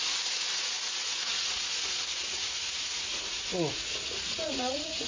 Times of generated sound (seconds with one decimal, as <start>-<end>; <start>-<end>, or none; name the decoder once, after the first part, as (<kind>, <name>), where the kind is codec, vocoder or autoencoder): 0.0-5.1 (vocoder, Vocos)

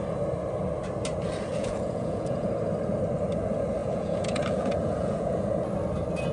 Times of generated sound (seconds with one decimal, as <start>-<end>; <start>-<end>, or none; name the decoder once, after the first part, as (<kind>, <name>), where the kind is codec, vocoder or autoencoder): 1.5-2.5 (vocoder, Vocos); 3.8-5.5

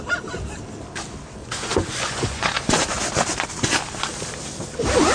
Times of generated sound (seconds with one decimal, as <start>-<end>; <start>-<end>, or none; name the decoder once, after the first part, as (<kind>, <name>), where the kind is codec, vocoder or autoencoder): 1.4-3.0 (vocoder, Vocos)